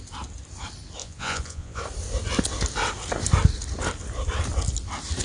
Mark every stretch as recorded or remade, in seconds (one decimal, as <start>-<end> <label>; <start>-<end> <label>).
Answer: 0.0-1.0 recorded; 1.0-1.8 remade; 1.8-5.2 recorded

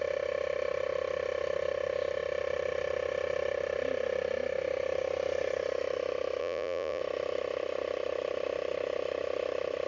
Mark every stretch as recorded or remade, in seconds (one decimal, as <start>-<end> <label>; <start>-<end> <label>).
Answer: 0.0-6.4 recorded; 6.4-7.0 remade; 7.0-9.9 recorded

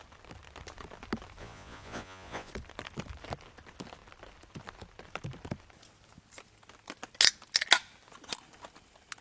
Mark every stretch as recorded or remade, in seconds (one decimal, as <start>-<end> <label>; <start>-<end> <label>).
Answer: 0.0-1.4 recorded; 1.4-2.5 remade; 2.5-9.2 recorded